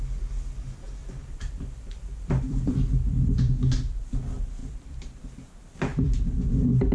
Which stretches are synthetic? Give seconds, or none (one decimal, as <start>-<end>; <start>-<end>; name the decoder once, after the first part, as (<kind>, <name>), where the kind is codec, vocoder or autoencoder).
1.0-3.6 (vocoder, BigVGAN v2); 4.6-5.2; 5.9-6.4